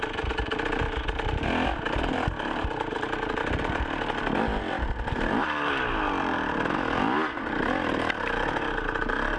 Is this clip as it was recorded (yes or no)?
yes